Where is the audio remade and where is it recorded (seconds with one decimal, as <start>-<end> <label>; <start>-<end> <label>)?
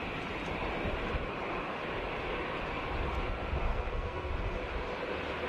0.0-3.7 recorded; 3.7-4.3 remade; 4.3-5.5 recorded